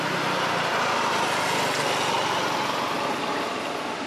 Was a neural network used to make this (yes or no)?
no